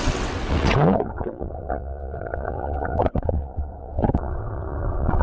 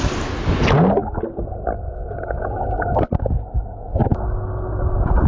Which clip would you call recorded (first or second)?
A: second